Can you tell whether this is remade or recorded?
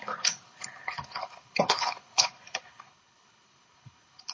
remade